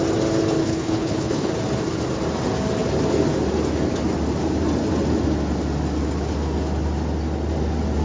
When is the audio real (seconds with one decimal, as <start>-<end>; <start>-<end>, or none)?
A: 0.0-0.6; 1.5-8.0